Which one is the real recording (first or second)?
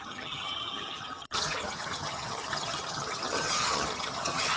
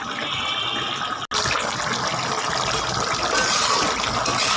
second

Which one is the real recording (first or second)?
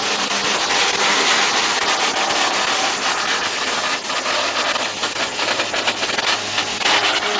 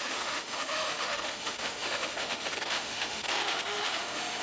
first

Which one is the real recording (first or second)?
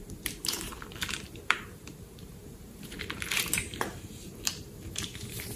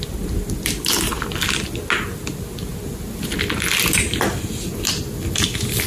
second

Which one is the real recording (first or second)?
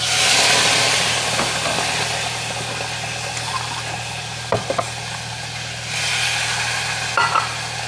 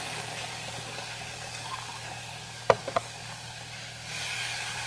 first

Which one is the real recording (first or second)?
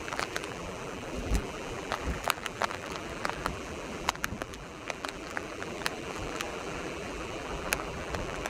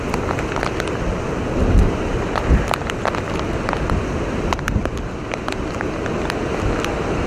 second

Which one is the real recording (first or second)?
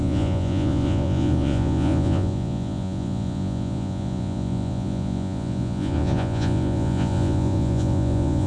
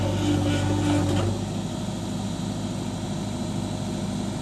second